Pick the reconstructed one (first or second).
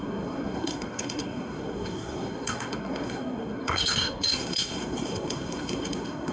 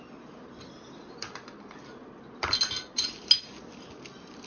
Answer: first